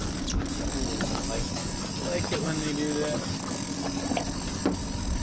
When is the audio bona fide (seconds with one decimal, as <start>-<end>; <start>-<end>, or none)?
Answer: 0.0-5.2